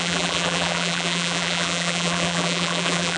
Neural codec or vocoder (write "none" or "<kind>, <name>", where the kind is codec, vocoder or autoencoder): vocoder, BigVGAN v2